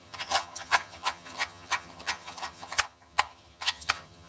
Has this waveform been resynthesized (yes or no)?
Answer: yes